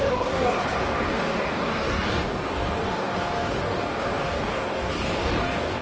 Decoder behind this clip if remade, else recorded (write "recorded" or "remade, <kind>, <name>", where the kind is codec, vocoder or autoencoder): remade, codec, DAC